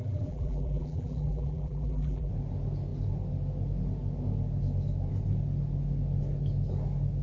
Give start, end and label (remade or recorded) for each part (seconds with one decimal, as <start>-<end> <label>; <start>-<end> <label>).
0.0-2.3 remade; 2.3-7.2 recorded